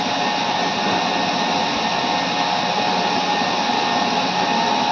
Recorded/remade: recorded